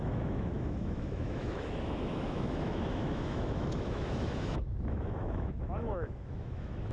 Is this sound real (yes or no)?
no